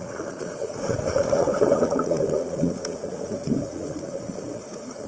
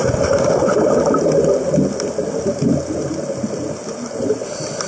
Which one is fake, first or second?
first